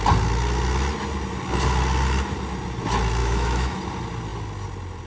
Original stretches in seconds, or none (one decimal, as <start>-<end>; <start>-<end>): 0.0-3.2; 3.8-5.1